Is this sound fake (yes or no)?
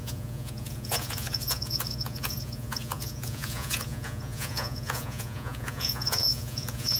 yes